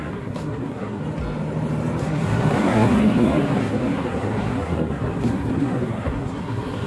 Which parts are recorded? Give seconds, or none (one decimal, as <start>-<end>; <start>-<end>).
1.0-2.0